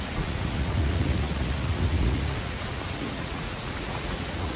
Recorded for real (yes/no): no